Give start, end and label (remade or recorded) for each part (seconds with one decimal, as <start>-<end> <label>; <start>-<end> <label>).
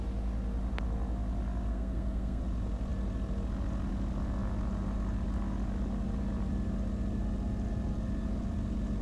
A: 0.0-1.7 recorded; 1.7-2.4 remade; 2.4-9.0 recorded